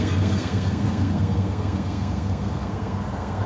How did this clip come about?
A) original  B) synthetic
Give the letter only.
B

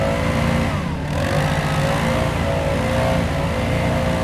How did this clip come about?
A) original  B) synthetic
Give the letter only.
A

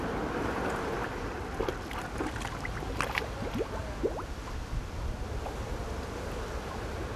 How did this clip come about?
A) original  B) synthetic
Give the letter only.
A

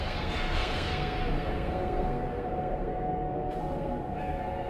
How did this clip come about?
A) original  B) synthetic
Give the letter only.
B